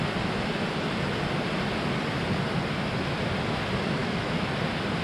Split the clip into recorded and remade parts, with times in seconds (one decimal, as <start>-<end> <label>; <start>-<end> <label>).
0.0-4.0 recorded; 4.0-4.5 remade; 4.5-5.0 recorded

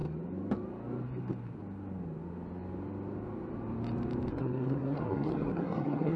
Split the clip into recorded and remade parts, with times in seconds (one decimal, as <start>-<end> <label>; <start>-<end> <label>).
0.0-4.3 recorded; 4.3-6.2 remade

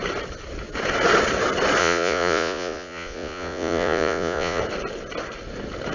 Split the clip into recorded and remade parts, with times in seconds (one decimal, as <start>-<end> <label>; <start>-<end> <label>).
0.0-1.8 recorded; 1.8-4.6 remade; 4.6-5.9 recorded

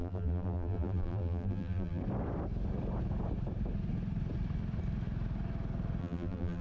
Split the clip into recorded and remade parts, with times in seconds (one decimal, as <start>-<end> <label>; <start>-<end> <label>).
0.0-2.0 remade; 2.0-6.0 recorded; 6.0-6.6 remade

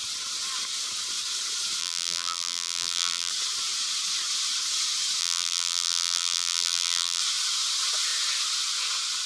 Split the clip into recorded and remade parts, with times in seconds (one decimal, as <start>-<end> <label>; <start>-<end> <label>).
0.0-1.8 recorded; 1.8-3.3 remade; 3.3-5.2 recorded; 5.2-7.2 remade; 7.2-9.3 recorded